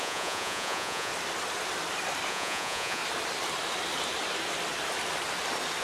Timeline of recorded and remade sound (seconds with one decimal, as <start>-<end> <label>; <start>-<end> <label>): 0.0-1.1 remade; 1.1-2.3 recorded; 2.3-3.0 remade; 3.0-5.8 recorded